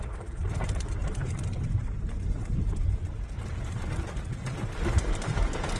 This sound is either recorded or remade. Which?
remade